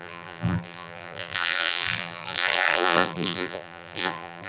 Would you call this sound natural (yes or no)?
no